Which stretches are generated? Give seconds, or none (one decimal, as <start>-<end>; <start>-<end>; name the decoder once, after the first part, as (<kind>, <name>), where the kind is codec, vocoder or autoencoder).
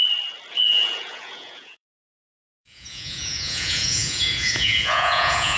0.5-5.6 (vocoder, Vocos)